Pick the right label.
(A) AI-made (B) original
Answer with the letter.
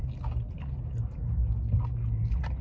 B